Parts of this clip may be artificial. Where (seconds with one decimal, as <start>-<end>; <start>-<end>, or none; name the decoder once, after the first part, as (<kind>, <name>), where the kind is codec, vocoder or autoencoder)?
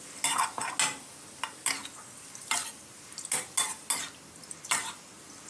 none